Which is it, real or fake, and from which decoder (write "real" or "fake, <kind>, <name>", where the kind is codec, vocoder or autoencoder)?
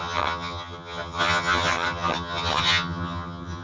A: fake, vocoder, HiFi-GAN